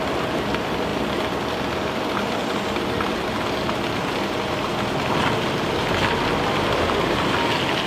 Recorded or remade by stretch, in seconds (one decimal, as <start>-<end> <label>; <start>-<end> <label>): 0.0-7.9 recorded